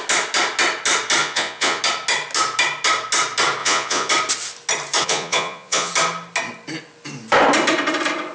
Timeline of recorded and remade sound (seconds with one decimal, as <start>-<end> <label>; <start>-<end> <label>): 0.0-1.2 recorded; 1.2-1.8 remade; 1.8-3.6 recorded; 3.6-4.1 remade; 4.1-5.0 recorded; 5.0-5.9 remade; 5.9-8.3 recorded

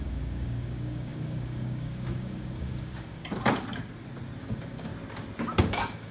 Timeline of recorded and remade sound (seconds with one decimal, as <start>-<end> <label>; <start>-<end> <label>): 0.0-3.2 remade; 3.2-4.4 recorded; 4.4-4.9 remade; 4.9-5.6 recorded; 5.6-6.1 remade

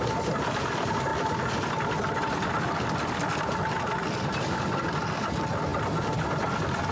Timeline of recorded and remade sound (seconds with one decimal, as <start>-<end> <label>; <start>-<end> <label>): 0.0-6.9 recorded

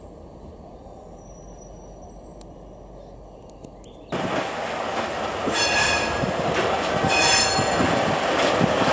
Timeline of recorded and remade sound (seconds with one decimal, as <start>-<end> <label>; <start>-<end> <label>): 0.0-8.9 recorded

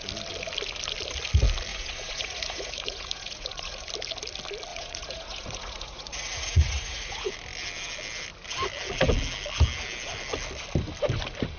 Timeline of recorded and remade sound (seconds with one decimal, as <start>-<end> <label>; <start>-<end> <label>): 0.0-1.7 recorded; 1.7-3.9 remade; 3.9-4.7 recorded; 4.7-7.3 remade; 7.3-11.6 recorded

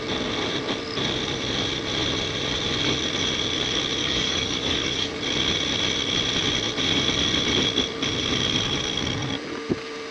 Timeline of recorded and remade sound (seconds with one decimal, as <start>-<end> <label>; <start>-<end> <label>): 0.0-4.0 recorded; 4.0-5.2 remade; 5.2-10.1 recorded

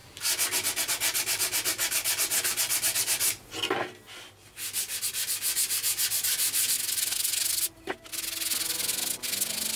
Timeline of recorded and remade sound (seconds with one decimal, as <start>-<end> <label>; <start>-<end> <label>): 0.0-9.8 recorded